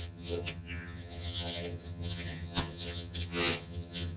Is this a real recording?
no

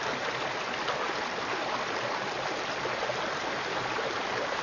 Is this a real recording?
yes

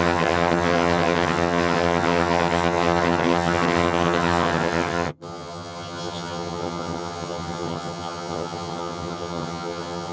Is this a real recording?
no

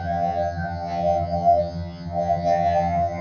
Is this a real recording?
no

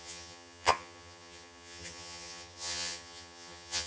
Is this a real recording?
no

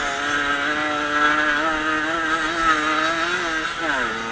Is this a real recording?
yes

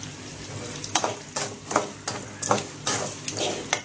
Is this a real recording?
yes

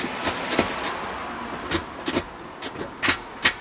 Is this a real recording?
yes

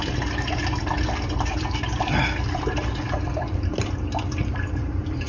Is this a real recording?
yes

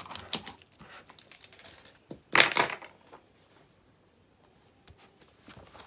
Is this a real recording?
yes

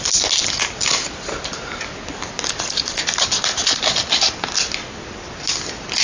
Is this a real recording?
yes